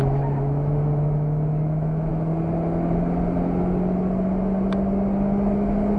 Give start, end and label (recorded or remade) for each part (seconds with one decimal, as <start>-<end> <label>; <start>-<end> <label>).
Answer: 0.0-2.1 remade; 2.1-6.0 recorded